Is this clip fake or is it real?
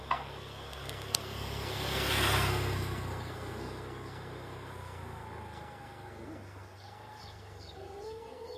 fake